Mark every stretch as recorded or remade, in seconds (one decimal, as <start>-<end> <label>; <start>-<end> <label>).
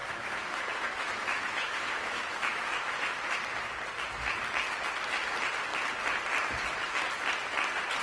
0.0-3.2 remade; 3.2-8.0 recorded